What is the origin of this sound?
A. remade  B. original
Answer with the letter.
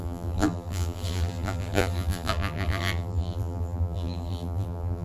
A